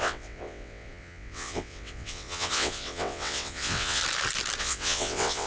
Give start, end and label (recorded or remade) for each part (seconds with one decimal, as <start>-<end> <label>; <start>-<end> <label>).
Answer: 0.0-4.0 remade; 4.0-4.6 recorded; 4.6-5.5 remade